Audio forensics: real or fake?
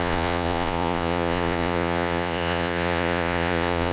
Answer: fake